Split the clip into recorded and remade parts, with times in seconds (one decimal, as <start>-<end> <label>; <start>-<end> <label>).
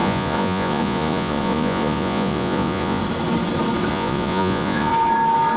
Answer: 0.0-3.0 remade; 3.0-3.9 recorded; 3.9-4.9 remade; 4.9-5.6 recorded